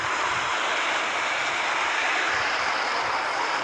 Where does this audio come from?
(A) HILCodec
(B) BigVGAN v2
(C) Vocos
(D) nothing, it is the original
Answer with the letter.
B